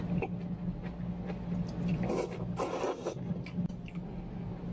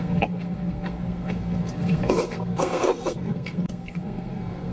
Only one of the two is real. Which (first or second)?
first